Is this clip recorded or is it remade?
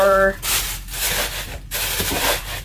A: remade